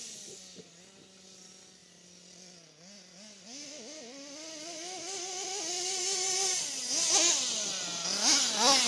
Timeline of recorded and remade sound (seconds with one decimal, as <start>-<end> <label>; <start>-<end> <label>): 0.0-8.9 recorded